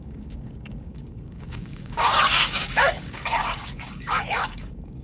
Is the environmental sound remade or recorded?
remade